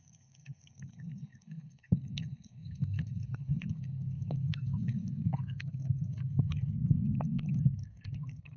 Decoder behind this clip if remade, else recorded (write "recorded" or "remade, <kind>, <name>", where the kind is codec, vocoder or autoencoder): remade, codec, SNAC